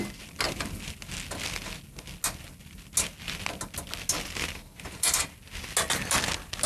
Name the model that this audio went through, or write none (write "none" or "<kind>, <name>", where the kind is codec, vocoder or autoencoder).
none